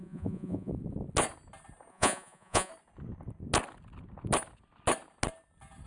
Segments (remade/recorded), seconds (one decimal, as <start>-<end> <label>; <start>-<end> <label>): 0.0-0.7 remade; 0.7-1.9 recorded; 1.9-2.7 remade; 2.7-5.9 recorded